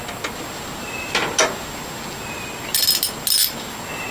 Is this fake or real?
real